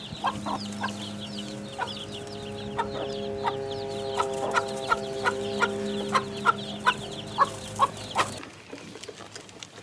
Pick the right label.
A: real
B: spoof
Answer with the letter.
A